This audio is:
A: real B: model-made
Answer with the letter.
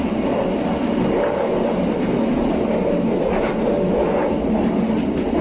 A